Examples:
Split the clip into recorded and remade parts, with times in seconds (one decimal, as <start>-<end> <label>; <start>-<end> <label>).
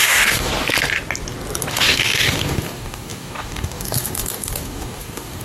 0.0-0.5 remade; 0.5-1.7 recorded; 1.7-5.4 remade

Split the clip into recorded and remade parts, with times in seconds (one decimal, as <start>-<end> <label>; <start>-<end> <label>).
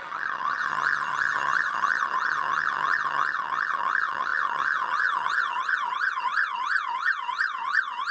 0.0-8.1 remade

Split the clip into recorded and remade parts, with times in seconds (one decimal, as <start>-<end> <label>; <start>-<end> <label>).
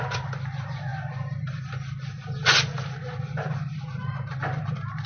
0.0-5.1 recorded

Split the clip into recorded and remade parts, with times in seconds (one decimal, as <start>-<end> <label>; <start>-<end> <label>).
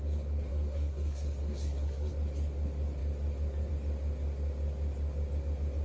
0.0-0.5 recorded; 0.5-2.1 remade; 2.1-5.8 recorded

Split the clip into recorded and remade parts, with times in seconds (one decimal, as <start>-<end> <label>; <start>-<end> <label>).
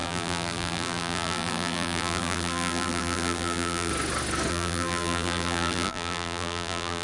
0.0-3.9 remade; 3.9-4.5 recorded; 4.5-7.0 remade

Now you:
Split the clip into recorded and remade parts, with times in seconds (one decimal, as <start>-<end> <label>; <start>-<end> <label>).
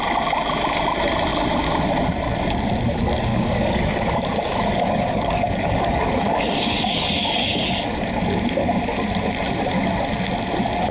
0.0-3.3 recorded; 3.3-8.2 remade; 8.2-10.9 recorded